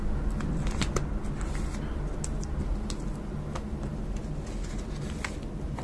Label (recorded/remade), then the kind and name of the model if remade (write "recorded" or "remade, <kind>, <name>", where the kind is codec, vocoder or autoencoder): recorded